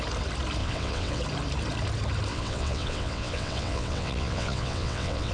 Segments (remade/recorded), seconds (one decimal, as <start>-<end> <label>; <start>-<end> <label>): 0.0-0.6 recorded; 0.6-1.2 remade; 1.2-2.3 recorded; 2.3-5.3 remade

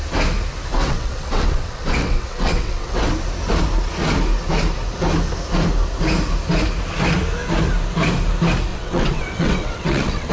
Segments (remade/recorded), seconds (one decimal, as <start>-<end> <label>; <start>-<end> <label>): 0.0-0.7 recorded; 0.7-3.1 remade; 3.1-8.7 recorded; 8.7-10.3 remade

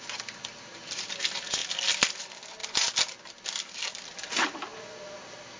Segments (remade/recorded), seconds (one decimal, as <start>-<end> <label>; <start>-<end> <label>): 0.0-5.6 recorded

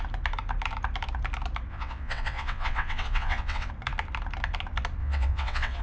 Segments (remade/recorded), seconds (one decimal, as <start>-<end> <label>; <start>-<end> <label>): 0.0-1.7 recorded; 1.7-3.7 remade; 3.7-5.0 recorded; 5.0-5.8 remade

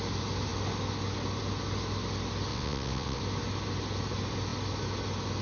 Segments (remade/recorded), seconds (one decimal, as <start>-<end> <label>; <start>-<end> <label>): 0.0-2.5 recorded; 2.5-3.2 remade; 3.2-5.4 recorded

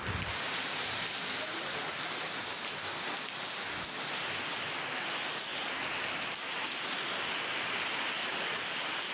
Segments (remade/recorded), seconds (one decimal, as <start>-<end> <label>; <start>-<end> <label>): 0.0-9.1 recorded

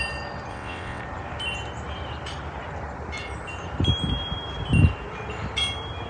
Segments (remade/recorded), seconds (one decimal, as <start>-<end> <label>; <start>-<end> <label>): 0.0-0.5 recorded; 0.5-1.0 remade; 1.0-6.1 recorded

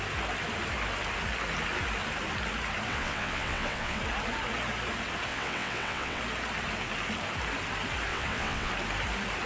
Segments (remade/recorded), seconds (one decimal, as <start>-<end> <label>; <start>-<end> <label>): 0.0-2.9 recorded; 2.9-4.0 remade; 4.0-5.3 recorded; 5.3-6.2 remade; 6.2-8.1 recorded; 8.1-8.7 remade; 8.7-9.5 recorded